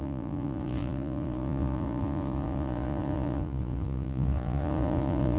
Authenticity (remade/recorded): remade